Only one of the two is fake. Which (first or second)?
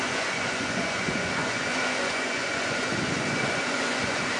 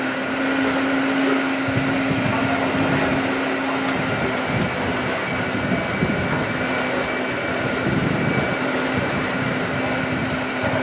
first